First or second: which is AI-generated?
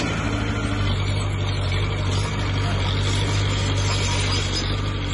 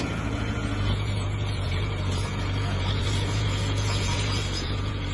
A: second